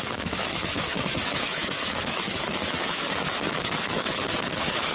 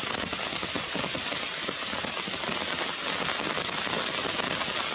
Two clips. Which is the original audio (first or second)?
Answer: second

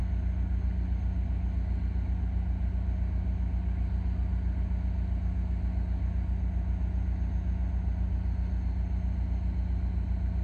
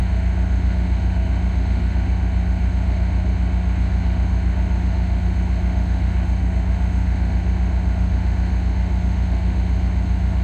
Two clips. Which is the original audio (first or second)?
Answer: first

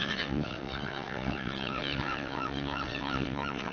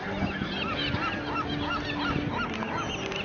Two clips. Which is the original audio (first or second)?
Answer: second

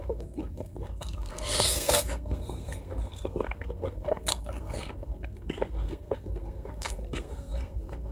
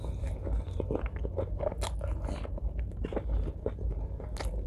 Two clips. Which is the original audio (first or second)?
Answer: second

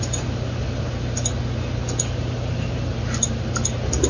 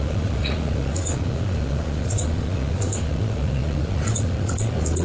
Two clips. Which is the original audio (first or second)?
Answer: first